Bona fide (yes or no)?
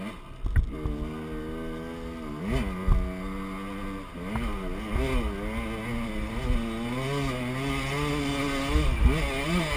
yes